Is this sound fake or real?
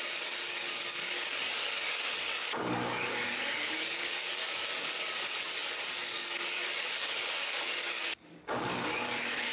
fake